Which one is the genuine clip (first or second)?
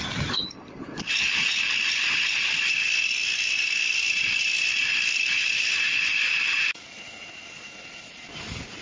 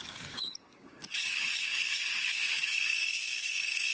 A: first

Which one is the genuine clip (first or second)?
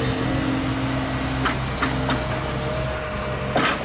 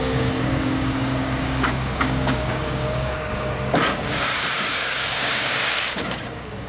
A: first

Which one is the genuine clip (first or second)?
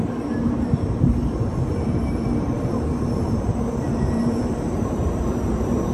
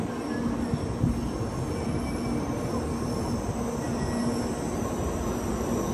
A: second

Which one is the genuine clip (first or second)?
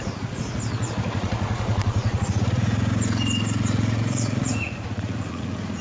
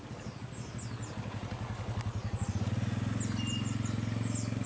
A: second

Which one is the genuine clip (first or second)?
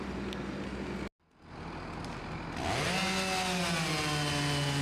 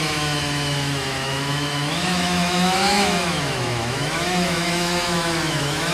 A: first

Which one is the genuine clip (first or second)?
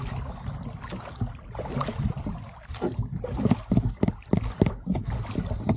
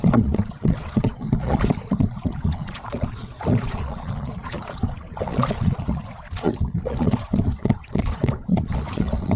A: first